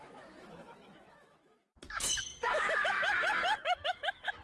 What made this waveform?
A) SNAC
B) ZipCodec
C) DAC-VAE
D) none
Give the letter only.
C